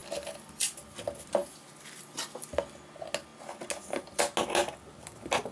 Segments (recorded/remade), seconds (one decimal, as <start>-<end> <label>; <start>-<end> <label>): 0.0-0.8 remade; 0.8-1.4 recorded; 1.4-2.6 remade; 2.6-5.5 recorded